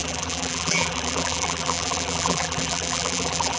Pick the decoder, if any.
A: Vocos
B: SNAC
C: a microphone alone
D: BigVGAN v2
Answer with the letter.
D